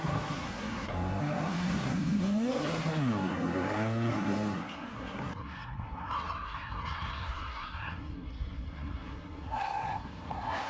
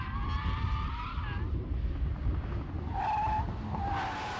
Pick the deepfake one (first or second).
first